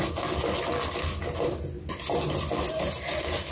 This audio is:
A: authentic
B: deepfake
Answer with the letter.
A